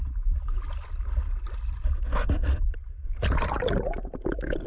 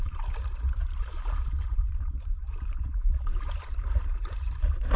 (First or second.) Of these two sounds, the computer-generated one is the second